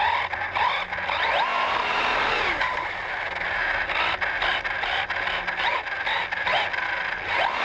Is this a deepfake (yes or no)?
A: no